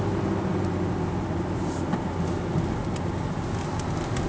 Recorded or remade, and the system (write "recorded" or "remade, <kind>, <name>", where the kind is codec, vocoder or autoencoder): recorded